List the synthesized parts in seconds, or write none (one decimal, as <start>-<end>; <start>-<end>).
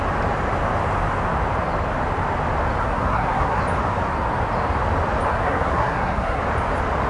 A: 2.8-3.6; 5.3-6.4